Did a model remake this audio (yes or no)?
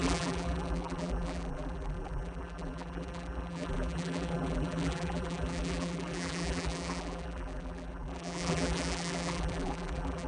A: yes